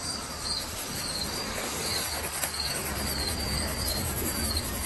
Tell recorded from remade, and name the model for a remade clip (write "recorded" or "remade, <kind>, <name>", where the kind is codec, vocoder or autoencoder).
remade, codec, DAC